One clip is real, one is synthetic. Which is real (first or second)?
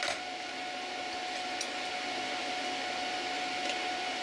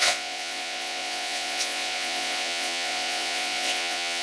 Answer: first